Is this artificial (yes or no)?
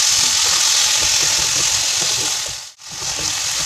no